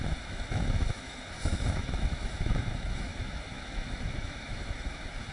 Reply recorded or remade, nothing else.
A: remade